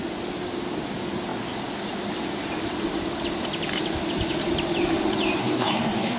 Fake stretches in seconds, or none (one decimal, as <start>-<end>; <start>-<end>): 5.4-6.2